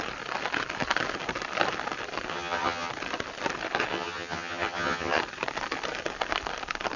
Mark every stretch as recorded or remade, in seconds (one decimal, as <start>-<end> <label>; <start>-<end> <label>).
0.0-2.3 recorded; 2.3-2.9 remade; 2.9-3.9 recorded; 3.9-5.2 remade; 5.2-7.0 recorded